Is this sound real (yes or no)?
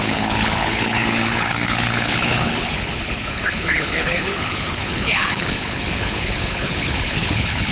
no